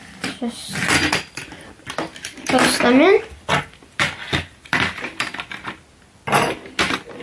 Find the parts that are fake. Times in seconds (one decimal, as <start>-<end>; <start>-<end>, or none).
none